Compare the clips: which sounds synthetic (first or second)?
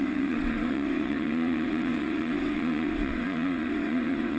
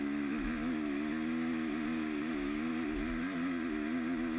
first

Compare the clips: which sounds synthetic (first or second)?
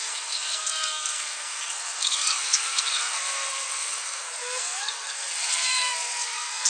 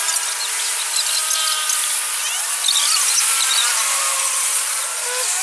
first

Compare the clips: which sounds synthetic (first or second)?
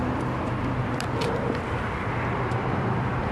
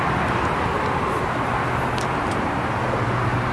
first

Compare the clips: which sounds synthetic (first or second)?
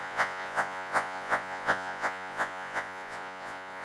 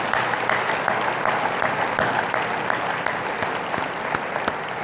first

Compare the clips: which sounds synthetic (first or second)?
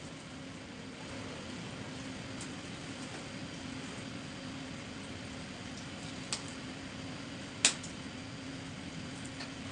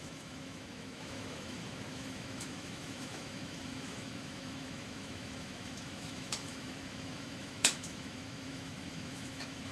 second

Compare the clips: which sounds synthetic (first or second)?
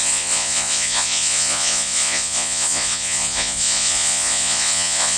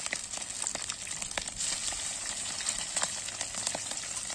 first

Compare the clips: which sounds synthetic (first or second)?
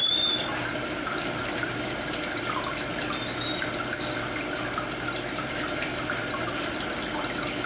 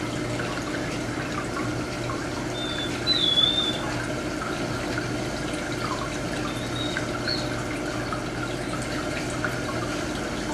first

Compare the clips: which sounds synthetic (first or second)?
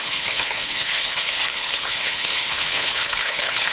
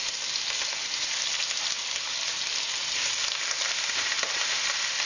first